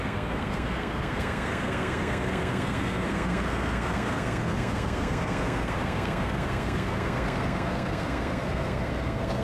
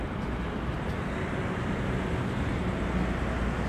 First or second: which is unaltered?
second